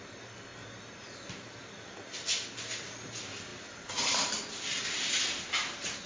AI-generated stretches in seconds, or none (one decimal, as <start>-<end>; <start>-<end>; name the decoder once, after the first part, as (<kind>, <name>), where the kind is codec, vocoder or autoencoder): none